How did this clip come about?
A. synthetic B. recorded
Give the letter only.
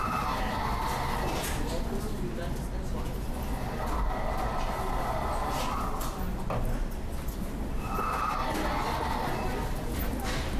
B